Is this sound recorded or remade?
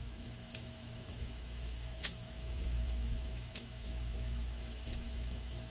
remade